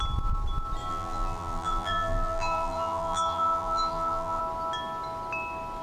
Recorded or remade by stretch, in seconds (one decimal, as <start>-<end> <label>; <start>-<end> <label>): 0.0-0.9 recorded; 0.9-4.4 remade; 4.4-5.8 recorded